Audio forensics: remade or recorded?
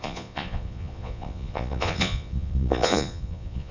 remade